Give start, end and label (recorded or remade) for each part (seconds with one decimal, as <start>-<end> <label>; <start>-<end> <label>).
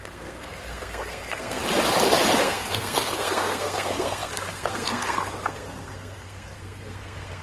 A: 0.0-1.6 remade; 1.6-2.4 recorded; 2.4-7.4 remade